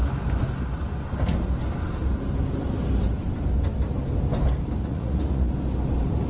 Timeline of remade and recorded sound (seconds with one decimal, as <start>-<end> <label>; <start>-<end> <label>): 0.0-4.8 recorded; 4.8-5.5 remade; 5.5-6.3 recorded